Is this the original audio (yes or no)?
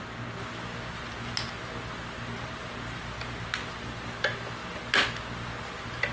yes